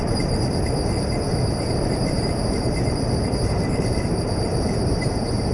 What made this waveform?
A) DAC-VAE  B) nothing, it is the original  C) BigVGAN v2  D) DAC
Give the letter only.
C